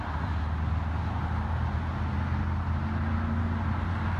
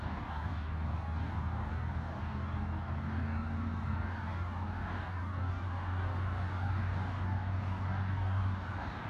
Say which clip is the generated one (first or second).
second